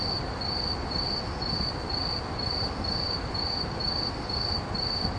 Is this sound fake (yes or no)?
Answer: no